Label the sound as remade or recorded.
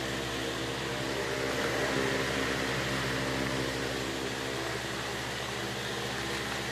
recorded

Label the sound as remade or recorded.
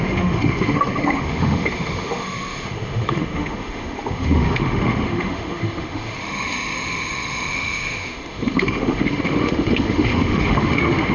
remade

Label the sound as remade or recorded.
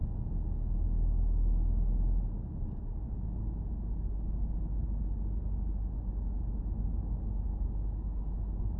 recorded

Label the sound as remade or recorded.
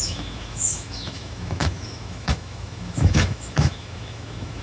remade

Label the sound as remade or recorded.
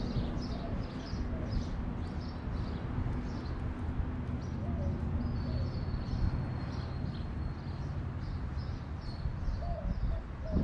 recorded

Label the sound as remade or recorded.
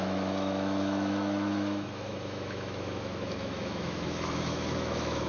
remade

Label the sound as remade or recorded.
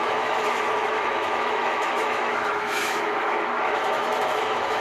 remade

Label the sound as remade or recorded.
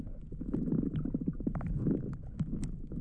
recorded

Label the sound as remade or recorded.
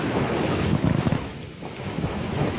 remade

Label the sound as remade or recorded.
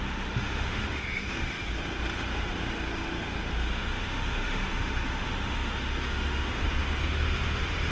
remade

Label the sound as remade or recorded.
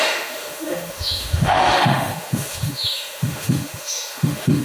remade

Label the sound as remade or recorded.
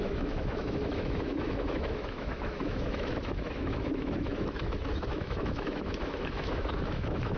remade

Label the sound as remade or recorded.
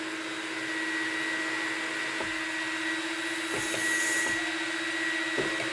recorded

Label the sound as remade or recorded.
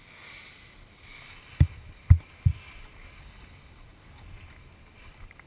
recorded